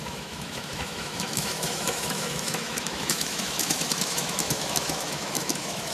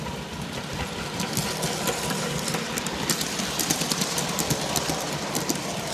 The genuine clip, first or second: second